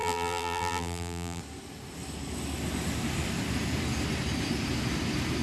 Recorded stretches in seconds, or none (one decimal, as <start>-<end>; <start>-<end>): 1.4-5.4